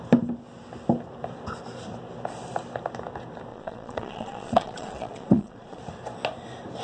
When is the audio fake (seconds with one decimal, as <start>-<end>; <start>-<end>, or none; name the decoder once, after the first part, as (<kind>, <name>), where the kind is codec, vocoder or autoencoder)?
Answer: 3.5-5.8 (vocoder, Vocos)